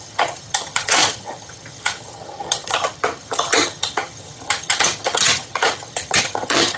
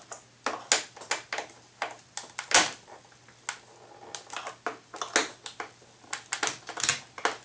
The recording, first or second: second